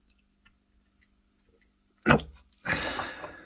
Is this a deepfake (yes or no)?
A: no